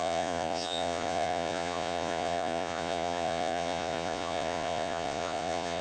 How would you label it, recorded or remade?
remade